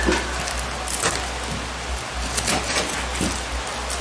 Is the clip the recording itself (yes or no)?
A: yes